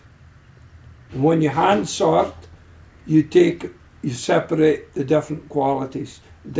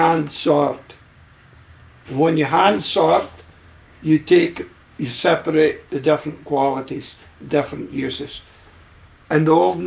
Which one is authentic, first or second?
first